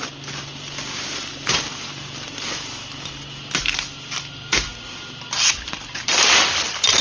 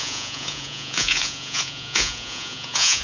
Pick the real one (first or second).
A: first